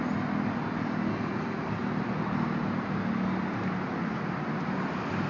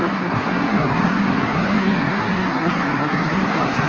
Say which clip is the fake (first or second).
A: second